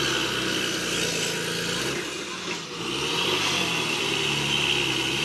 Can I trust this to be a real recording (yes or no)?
yes